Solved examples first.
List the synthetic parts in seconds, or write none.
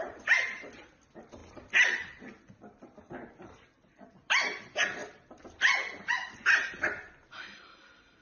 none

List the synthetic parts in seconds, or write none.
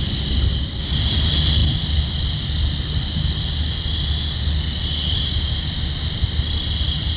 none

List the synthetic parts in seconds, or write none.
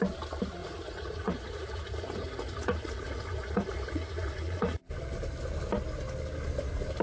0.6-4.8 (vocoder, Vocos)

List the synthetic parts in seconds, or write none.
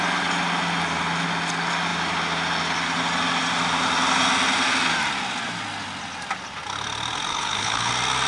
7.3-7.9 (codec, HILCodec)